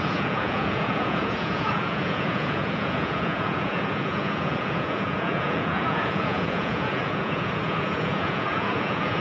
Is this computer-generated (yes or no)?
yes